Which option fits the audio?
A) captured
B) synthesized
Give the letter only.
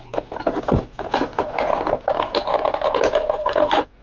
A